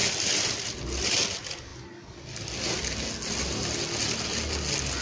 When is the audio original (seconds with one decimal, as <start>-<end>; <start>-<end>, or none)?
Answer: 0.0-5.0